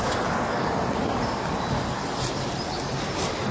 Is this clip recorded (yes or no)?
yes